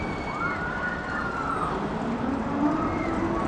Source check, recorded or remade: recorded